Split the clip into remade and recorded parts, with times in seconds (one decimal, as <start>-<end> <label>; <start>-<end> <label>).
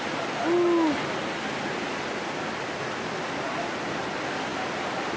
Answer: 0.0-4.5 recorded; 4.5-5.2 remade